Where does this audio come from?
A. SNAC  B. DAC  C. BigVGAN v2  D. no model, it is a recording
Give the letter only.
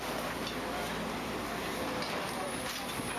D